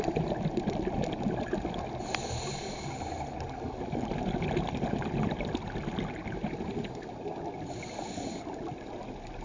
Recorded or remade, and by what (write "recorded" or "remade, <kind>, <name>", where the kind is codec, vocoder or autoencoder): recorded